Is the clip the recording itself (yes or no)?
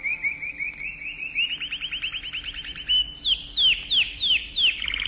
yes